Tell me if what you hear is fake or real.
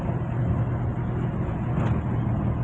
real